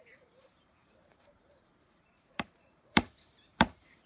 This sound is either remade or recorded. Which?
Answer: remade